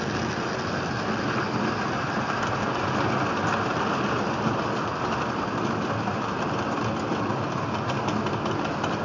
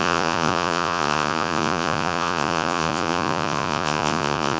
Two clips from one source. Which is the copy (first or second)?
second